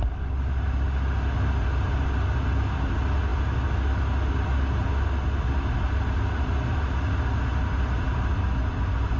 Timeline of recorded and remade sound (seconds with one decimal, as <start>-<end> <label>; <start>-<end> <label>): 0.0-9.2 recorded